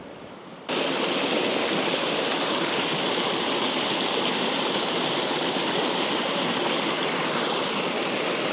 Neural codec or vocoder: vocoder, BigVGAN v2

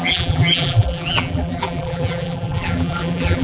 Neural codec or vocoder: vocoder, BigVGAN v2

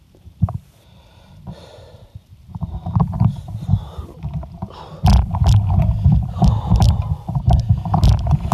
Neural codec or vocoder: vocoder, BigVGAN v2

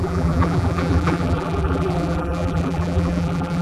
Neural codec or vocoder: vocoder, BigVGAN v2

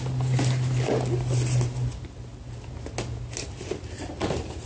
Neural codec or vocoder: none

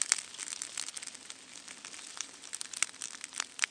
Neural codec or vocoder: none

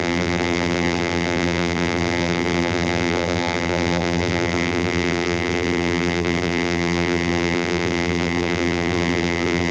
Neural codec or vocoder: vocoder, BigVGAN v2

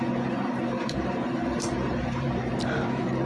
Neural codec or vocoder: vocoder, BigVGAN v2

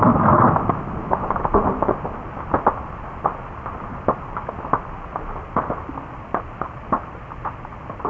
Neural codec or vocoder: none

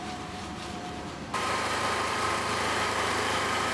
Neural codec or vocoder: vocoder, BigVGAN v2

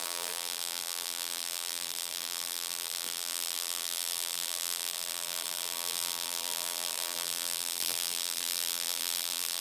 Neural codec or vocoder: vocoder, BigVGAN v2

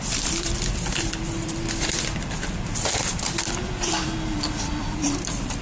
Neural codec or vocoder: vocoder, BigVGAN v2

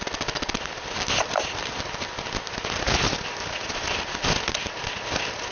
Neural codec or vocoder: none